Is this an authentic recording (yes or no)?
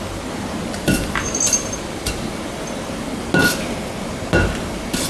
yes